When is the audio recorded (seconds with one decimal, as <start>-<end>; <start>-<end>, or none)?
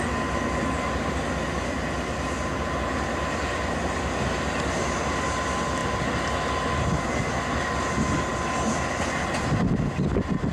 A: 0.0-5.8; 6.3-10.5